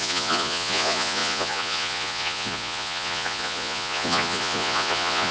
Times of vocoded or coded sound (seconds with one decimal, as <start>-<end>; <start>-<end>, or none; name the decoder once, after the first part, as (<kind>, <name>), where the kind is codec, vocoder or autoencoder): 0.0-5.3 (vocoder, Vocos)

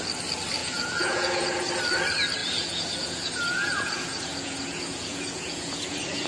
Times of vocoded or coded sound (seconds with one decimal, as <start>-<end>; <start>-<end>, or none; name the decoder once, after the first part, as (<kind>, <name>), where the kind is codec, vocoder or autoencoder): 0.6-1.7 (vocoder, Vocos); 2.4-6.3

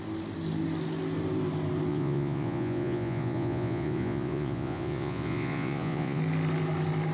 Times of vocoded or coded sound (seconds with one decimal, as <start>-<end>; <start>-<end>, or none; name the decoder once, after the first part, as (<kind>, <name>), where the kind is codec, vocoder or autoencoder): 1.9-6.2 (vocoder, Vocos)

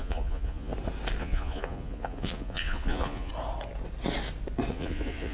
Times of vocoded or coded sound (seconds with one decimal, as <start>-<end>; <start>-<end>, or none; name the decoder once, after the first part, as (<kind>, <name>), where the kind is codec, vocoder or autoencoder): 0.0-0.7 (vocoder, Vocos); 1.2-3.3; 4.7-5.3

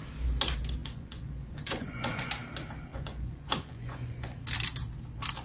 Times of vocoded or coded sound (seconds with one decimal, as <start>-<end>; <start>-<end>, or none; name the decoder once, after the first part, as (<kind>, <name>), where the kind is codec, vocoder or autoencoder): 0.8-2.3 (vocoder, Vocos); 2.9-4.4

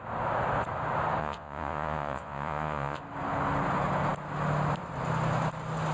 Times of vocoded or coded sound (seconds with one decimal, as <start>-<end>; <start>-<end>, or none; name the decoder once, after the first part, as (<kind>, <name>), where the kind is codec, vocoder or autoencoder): 1.2-3.0 (vocoder, Vocos)

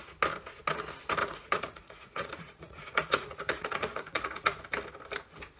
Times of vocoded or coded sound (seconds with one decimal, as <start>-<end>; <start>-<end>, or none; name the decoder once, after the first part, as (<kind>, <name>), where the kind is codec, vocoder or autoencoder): 1.2-4.6 (vocoder, Vocos)

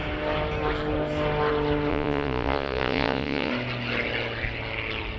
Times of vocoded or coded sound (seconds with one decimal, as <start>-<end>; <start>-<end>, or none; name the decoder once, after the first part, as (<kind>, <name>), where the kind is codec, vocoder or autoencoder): 1.9-3.5 (vocoder, Vocos)